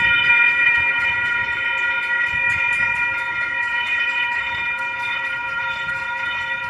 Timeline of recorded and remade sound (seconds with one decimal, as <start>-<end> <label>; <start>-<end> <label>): 0.0-1.4 remade; 1.4-3.6 recorded; 3.6-6.7 remade